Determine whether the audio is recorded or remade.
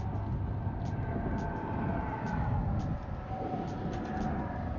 recorded